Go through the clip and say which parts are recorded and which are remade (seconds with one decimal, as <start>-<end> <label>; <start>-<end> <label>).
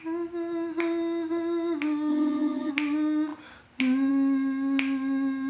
0.0-2.1 recorded; 2.1-2.7 remade; 2.7-5.5 recorded